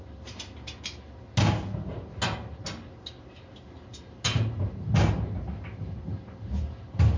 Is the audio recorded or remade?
recorded